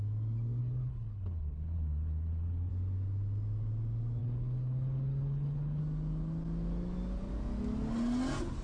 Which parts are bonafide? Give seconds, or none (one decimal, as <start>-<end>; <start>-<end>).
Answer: 0.0-0.6; 2.7-4.2; 5.8-8.6